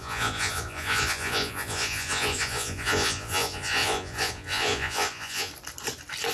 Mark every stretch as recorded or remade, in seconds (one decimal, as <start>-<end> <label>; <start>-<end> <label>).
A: 0.0-5.5 remade; 5.5-6.3 recorded